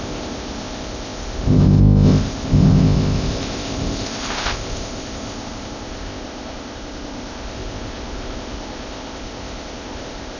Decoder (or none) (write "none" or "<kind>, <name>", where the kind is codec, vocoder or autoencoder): codec, ZipCodec